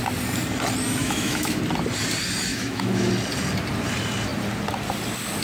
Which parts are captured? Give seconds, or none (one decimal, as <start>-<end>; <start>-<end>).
0.0-1.0; 1.6-2.5; 3.1-5.4